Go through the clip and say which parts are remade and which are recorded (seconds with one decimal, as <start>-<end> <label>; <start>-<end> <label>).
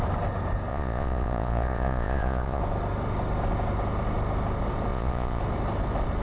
0.0-0.7 recorded; 0.7-2.6 remade; 2.6-4.9 recorded; 4.9-5.4 remade; 5.4-6.2 recorded